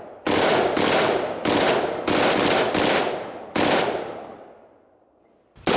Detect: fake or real real